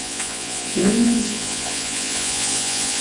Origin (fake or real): fake